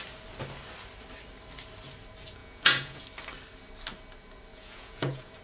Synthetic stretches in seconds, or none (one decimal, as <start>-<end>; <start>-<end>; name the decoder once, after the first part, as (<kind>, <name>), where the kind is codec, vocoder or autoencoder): 2.4-3.0 (vocoder, Vocos); 4.5-5.4

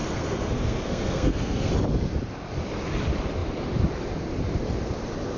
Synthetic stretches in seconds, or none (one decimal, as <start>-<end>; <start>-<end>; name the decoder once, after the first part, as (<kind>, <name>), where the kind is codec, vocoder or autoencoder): 0.0-1.7 (codec, SNAC)